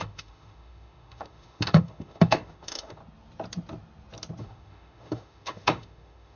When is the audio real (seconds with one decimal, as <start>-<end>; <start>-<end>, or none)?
3.0-4.4